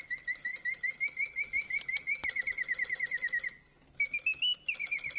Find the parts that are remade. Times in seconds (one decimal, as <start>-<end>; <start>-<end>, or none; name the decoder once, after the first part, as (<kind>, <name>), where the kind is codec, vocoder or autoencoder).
none